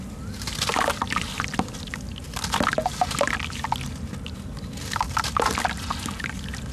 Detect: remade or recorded recorded